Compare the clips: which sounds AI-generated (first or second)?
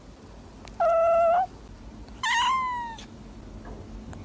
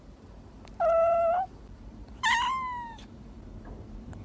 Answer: second